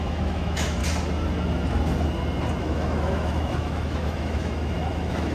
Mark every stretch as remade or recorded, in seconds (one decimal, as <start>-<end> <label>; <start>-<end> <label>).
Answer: 0.0-0.8 remade; 0.8-2.6 recorded; 2.6-5.3 remade